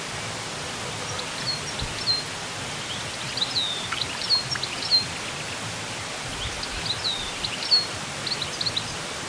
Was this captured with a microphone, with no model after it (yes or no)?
yes